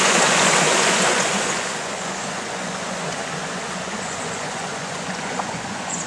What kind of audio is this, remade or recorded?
remade